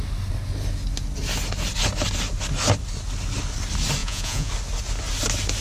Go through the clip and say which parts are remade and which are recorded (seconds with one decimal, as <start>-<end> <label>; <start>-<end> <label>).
0.0-4.0 recorded; 4.0-4.5 remade; 4.5-5.6 recorded